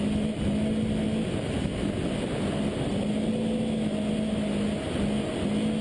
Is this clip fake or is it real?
real